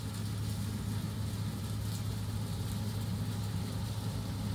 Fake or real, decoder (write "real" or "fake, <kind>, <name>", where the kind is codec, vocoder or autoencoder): real